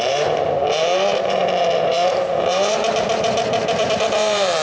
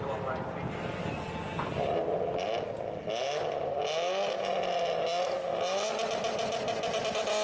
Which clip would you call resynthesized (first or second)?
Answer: first